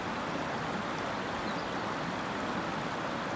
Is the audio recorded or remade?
recorded